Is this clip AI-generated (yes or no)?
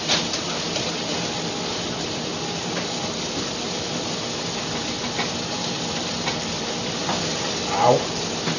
yes